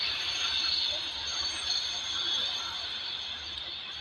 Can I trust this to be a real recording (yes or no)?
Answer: no